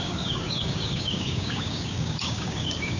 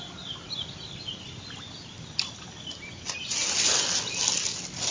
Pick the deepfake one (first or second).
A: first